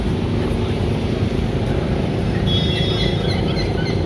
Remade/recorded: remade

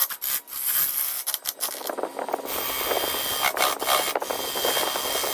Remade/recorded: recorded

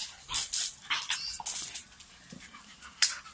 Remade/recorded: recorded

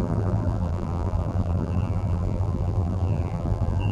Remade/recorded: remade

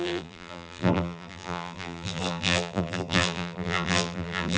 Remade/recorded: remade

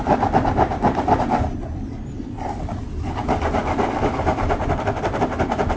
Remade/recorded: remade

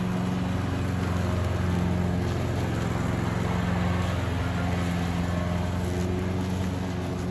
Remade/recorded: recorded